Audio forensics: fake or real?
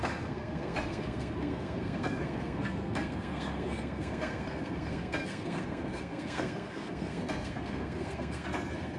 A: fake